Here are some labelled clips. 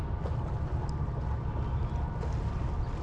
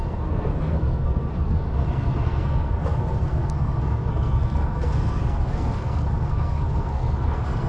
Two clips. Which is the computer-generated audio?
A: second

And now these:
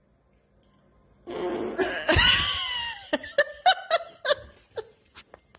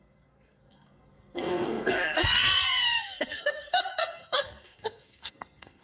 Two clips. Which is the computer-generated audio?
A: second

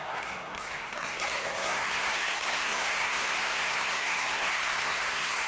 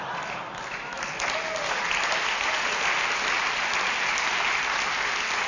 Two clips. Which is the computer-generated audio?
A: first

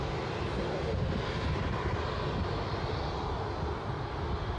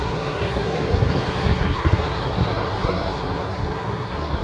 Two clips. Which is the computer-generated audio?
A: second